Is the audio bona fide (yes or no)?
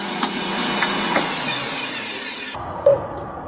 no